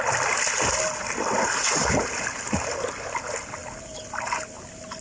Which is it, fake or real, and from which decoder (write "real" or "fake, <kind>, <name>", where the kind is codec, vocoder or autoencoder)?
real